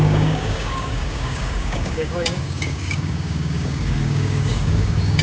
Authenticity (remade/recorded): remade